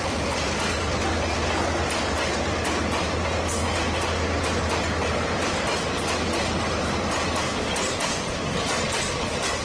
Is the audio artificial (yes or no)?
no